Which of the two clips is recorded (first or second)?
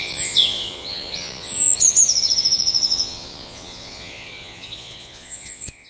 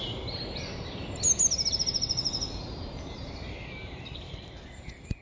second